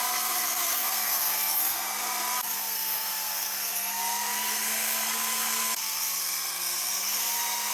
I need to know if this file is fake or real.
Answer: fake